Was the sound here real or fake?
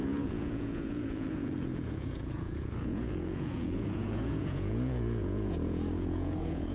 fake